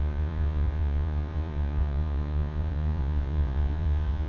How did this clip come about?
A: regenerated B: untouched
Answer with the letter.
A